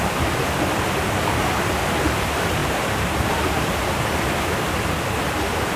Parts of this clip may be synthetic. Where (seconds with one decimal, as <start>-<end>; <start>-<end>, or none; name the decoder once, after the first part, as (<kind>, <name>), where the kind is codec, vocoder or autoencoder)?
2.6-4.2 (vocoder, BigVGAN v2)